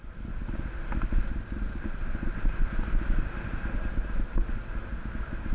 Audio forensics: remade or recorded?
recorded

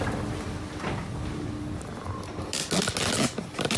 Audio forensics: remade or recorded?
recorded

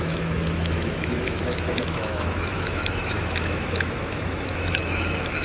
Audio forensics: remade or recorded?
remade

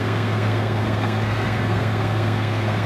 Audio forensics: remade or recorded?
remade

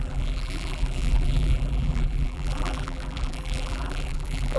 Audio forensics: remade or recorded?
remade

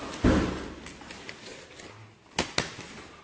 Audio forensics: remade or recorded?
recorded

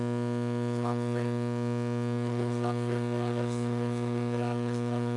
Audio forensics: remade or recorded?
remade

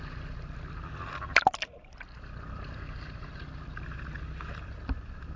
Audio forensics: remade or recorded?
remade